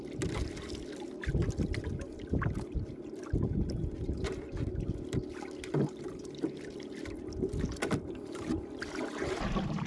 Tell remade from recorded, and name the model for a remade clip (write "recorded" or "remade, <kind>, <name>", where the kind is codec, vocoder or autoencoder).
recorded